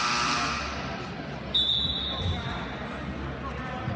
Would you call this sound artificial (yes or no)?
no